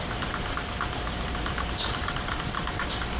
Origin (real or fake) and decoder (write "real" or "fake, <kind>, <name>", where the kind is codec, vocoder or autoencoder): real